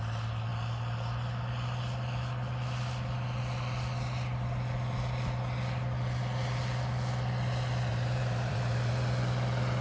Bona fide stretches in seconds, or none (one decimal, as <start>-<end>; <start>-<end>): 0.0-7.9; 8.9-9.8